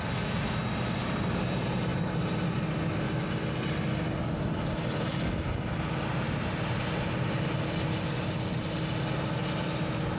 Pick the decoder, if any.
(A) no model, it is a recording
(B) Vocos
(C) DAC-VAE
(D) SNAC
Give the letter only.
A